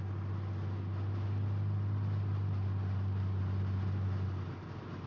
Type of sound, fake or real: real